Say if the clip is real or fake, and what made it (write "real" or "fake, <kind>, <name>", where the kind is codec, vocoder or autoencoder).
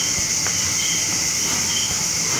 real